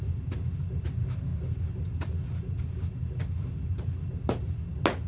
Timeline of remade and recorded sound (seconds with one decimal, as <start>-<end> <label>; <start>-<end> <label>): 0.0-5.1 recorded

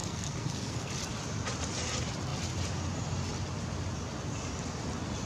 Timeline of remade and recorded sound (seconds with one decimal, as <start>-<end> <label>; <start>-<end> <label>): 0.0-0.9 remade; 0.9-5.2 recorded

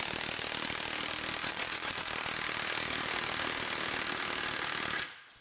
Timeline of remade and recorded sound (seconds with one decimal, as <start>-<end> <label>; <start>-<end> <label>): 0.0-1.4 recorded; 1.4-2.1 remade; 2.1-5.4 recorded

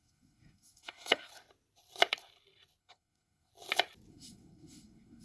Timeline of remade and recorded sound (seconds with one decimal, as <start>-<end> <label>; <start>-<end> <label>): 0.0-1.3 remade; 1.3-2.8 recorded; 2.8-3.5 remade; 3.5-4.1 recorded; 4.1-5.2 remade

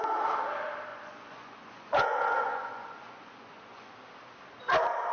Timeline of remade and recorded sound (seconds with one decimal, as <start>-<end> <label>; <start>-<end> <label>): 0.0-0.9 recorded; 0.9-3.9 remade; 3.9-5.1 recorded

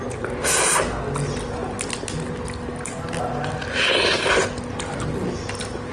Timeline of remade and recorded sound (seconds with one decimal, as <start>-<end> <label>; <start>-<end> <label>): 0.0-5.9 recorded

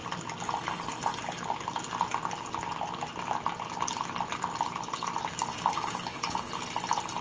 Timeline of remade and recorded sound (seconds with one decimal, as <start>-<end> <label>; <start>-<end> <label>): 0.0-5.5 recorded; 5.5-6.5 remade; 6.5-7.2 recorded